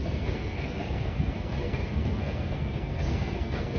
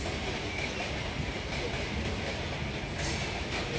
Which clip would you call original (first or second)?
second